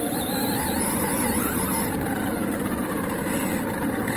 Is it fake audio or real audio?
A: fake